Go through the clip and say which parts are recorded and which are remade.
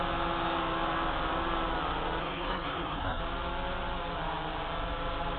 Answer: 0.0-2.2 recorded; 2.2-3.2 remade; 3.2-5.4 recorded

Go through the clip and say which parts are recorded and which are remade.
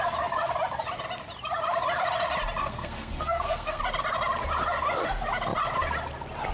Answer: 0.0-2.6 recorded; 2.6-3.8 remade; 3.8-6.5 recorded